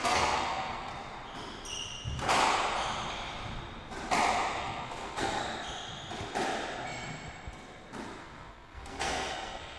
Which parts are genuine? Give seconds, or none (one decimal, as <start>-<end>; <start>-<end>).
0.9-4.6; 5.4-8.2